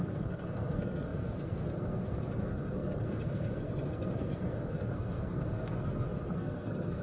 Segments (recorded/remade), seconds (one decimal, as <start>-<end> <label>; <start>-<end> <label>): 0.0-7.0 remade